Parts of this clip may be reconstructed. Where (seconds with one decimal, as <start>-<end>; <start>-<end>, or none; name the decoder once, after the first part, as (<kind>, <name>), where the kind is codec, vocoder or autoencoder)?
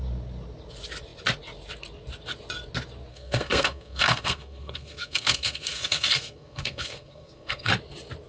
3.1-7.7 (codec, SNAC)